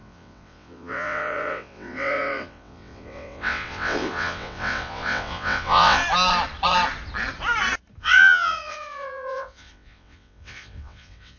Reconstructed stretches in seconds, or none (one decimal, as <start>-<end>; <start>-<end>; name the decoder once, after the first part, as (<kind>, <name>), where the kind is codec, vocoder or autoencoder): 0.0-6.0 (vocoder, WaveNeXt); 8.0-11.4